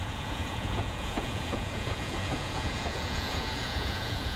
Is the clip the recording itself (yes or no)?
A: no